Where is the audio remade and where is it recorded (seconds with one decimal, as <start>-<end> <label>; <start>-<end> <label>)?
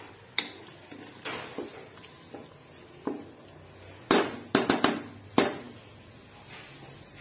0.0-7.2 recorded